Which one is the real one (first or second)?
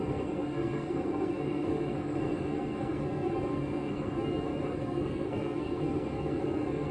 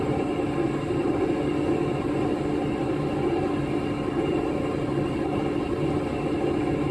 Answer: second